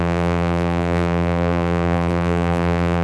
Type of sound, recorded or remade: remade